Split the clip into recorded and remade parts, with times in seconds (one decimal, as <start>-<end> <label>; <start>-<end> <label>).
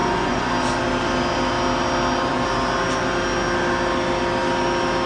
0.0-0.5 remade; 0.5-5.1 recorded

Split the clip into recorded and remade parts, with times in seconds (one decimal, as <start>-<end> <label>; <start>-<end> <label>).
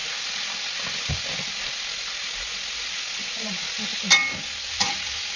0.0-5.4 recorded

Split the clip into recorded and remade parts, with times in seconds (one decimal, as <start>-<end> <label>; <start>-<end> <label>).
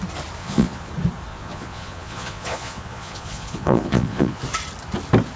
0.0-0.4 recorded; 0.4-0.9 remade; 0.9-1.3 recorded; 1.3-4.4 remade; 4.4-5.4 recorded